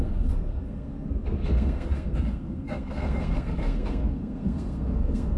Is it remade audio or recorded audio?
remade